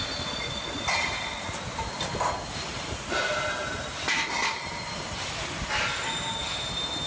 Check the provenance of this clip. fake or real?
real